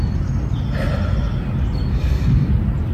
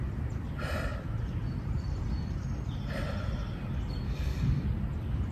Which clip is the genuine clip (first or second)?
first